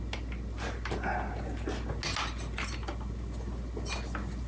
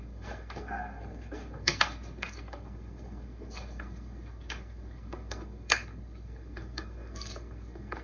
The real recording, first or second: first